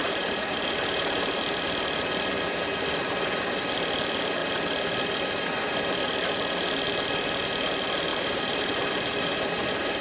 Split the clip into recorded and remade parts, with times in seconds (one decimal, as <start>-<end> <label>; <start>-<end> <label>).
0.0-1.4 remade; 1.4-8.1 recorded; 8.1-10.0 remade